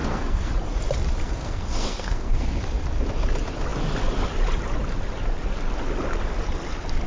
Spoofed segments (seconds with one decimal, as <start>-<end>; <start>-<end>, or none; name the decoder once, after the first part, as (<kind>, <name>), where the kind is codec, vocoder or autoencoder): 0.0-0.5 (codec, SNAC); 1.2-2.6